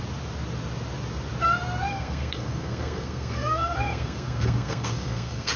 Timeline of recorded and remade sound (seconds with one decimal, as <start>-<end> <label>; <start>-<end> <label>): 0.0-1.9 recorded; 1.9-5.6 remade